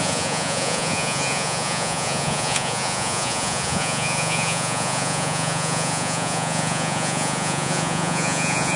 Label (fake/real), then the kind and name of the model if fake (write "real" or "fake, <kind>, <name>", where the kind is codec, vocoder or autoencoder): fake, vocoder, Vocos